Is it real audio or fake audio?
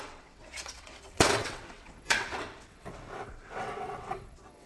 fake